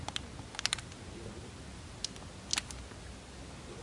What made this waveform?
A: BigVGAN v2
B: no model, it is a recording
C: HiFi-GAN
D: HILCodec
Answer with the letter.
B